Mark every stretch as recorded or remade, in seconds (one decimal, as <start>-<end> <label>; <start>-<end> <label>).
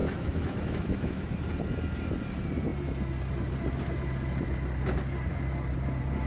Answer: 0.0-1.3 remade; 1.3-6.3 recorded